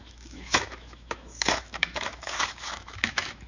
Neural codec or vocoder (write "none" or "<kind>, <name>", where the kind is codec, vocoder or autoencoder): autoencoder, DAC-VAE